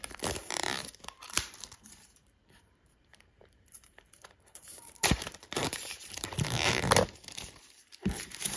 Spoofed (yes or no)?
yes